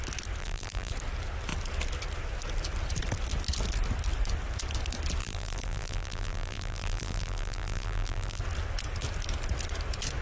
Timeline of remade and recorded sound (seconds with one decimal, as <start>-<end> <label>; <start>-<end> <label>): 0.0-0.4 recorded; 0.4-0.9 remade; 0.9-5.2 recorded; 5.2-8.4 remade; 8.4-10.2 recorded